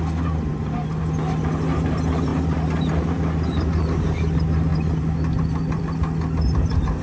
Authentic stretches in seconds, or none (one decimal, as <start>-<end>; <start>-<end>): 0.0-7.0